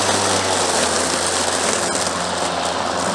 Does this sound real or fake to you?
real